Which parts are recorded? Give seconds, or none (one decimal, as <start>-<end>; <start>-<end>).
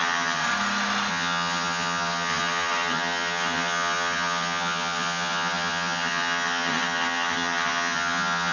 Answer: 0.4-1.1